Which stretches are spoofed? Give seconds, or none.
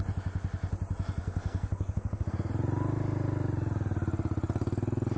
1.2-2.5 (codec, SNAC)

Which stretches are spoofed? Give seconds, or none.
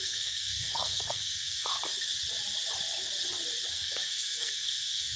0.0-1.7 (codec, SNAC); 3.7-5.2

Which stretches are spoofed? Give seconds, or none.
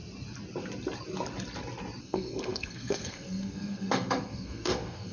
2.0-5.1 (codec, SNAC)